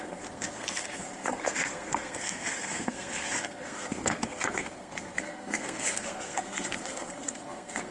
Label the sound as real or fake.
fake